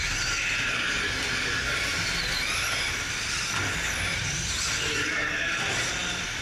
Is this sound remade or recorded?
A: recorded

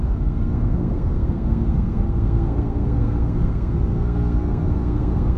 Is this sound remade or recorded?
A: remade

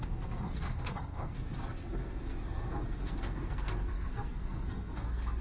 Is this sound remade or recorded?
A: remade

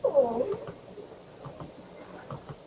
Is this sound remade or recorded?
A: recorded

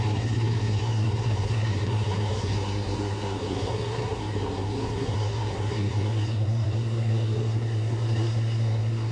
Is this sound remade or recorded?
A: remade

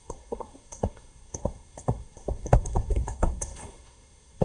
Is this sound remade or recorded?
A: remade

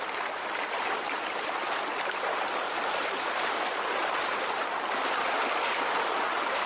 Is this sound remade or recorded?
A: recorded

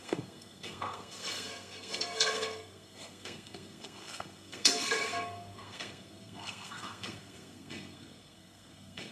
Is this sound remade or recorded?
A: remade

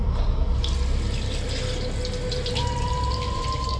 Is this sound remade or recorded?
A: recorded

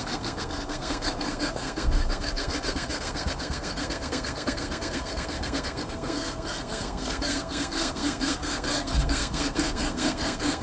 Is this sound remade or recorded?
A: remade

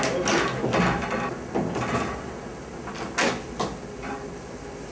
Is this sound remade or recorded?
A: recorded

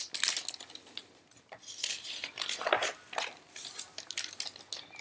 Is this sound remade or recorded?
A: recorded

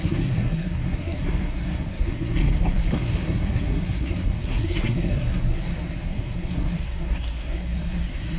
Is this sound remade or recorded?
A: remade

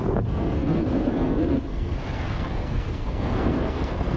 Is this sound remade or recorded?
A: remade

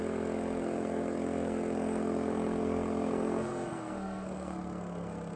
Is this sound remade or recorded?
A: remade